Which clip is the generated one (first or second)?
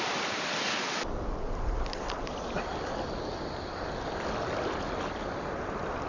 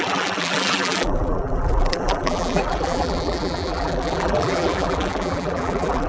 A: second